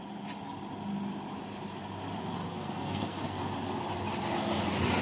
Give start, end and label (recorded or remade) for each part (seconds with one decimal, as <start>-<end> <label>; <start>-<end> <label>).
0.0-2.4 recorded; 2.4-3.4 remade; 3.4-5.0 recorded